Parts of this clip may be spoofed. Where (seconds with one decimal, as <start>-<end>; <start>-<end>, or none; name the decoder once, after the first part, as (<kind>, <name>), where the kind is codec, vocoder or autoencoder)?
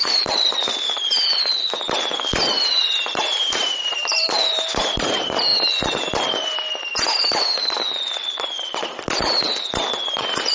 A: 0.0-1.1 (vocoder, BigVGAN v2); 2.7-5.5; 10.1-10.5